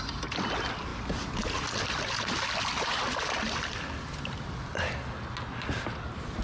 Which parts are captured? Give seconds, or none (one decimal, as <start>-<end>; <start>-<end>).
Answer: 0.0-6.4